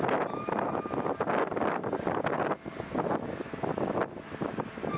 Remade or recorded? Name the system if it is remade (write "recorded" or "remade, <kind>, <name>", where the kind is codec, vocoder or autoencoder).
recorded